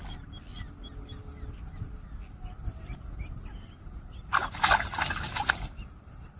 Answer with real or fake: real